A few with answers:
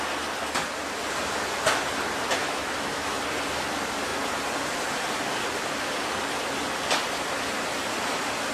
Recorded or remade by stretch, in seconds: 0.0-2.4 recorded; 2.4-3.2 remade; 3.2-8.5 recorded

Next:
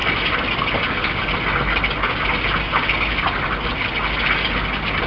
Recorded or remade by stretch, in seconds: 0.0-5.1 recorded